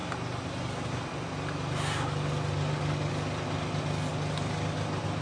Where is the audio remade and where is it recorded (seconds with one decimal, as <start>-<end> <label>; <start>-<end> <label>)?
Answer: 0.0-5.2 recorded